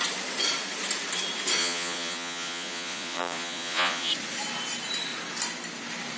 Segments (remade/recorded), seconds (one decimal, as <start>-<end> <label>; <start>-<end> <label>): 0.0-1.6 recorded; 1.6-4.1 remade; 4.1-6.2 recorded

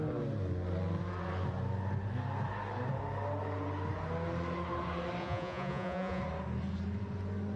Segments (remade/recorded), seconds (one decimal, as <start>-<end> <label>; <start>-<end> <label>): 0.0-5.2 recorded; 5.2-6.2 remade; 6.2-7.6 recorded

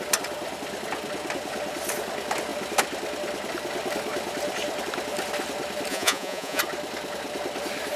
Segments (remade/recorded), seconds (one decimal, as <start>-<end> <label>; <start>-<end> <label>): 0.0-5.9 recorded; 5.9-6.6 remade; 6.6-8.0 recorded